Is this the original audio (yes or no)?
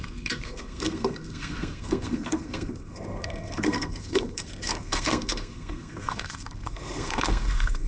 no